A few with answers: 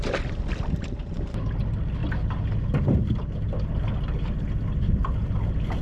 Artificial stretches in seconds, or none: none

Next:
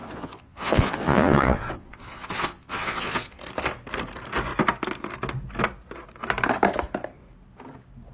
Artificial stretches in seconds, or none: 0.0-3.4 (vocoder, Vocos)